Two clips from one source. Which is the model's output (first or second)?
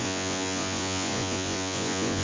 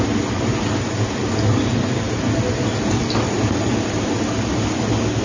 first